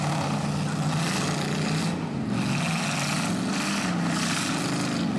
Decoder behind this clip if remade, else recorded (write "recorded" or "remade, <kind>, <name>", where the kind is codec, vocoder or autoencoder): recorded